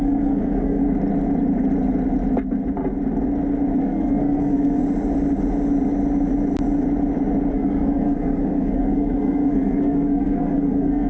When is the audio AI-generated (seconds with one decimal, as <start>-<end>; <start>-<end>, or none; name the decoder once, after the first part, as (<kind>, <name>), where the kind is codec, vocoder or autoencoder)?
0.0-0.8 (codec, SNAC); 3.8-4.8; 7.5-11.1